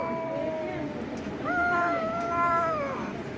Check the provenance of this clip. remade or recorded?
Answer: recorded